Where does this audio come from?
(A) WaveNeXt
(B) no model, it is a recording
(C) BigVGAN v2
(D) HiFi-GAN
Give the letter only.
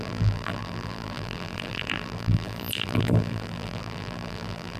C